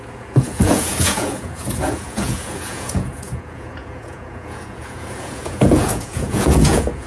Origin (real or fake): fake